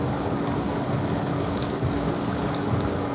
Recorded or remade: remade